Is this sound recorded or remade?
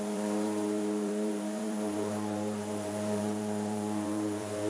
remade